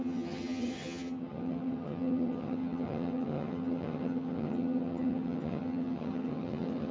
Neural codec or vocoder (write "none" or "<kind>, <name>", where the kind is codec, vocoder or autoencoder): vocoder, HiFi-GAN